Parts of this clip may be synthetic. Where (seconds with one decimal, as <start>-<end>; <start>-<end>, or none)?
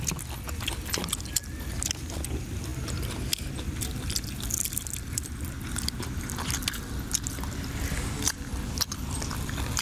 none